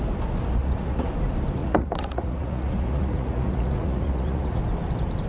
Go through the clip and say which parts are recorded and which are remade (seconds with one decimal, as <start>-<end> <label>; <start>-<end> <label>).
0.0-0.6 recorded; 0.6-1.1 remade; 1.1-1.6 recorded; 1.6-4.6 remade; 4.6-5.3 recorded